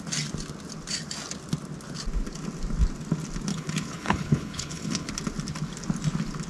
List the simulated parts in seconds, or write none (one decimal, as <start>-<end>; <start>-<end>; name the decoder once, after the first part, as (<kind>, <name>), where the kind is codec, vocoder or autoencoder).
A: 3.5-5.1 (codec, HILCodec)